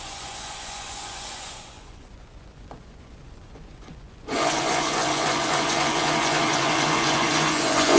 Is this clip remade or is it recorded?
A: remade